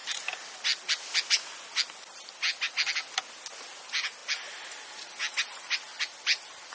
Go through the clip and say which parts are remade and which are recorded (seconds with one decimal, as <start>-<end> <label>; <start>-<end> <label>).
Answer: 0.0-6.7 recorded